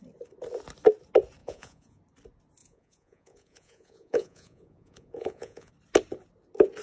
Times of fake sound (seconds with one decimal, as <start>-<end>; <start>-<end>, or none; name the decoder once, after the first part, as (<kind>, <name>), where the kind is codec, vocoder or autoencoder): 1.4-2.0 (vocoder, Vocos); 2.6-5.7

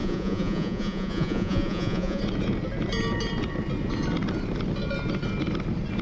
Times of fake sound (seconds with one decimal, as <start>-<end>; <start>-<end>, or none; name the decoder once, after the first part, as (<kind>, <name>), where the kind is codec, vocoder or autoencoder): 0.0-2.2 (vocoder, Vocos)

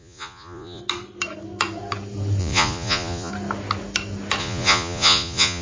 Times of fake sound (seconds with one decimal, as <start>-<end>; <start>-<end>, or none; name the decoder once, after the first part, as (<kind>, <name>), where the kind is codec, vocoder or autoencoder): 0.0-0.8 (vocoder, Vocos); 2.4-3.3; 4.4-5.6

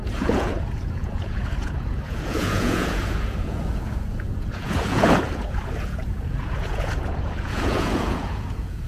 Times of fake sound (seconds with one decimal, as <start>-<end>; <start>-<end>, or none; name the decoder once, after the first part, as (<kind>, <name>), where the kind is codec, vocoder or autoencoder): 0.0-8.9 (vocoder, Vocos)

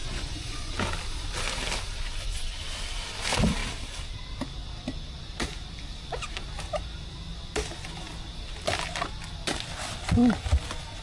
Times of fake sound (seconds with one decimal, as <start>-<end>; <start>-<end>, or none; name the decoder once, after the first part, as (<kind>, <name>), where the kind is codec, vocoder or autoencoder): 0.0-0.7 (vocoder, Vocos)

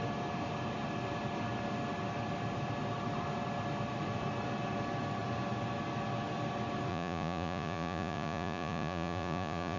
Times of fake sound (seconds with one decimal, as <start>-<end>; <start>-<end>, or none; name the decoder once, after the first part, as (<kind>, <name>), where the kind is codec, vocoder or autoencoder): 6.9-9.8 (vocoder, Vocos)